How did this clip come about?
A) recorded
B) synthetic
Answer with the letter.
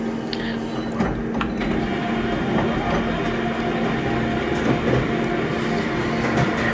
A